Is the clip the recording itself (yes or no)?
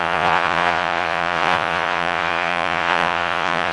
no